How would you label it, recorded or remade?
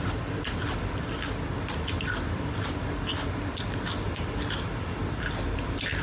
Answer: recorded